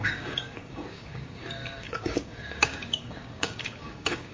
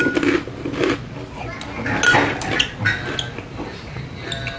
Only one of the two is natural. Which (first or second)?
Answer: second